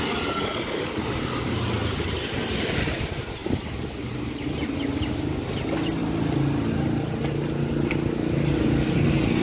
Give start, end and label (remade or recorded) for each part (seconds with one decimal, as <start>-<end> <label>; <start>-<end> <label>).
0.0-9.4 recorded